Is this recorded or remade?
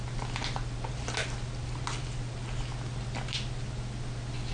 recorded